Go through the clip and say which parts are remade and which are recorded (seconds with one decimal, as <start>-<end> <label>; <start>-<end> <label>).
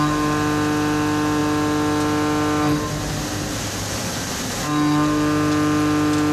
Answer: 0.0-6.3 recorded